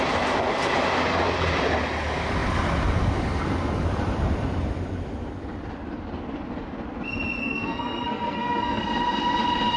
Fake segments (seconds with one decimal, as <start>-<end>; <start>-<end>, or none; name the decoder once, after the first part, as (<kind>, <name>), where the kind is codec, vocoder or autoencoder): 7.4-8.8 (codec, SNAC)